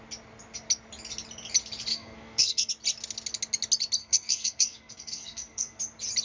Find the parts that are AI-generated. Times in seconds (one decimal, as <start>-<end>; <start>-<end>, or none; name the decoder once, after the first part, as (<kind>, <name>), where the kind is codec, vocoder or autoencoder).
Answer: 1.9-2.7 (codec, SNAC); 4.0-5.8